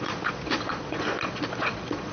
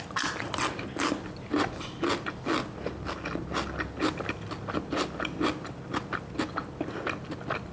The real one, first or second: second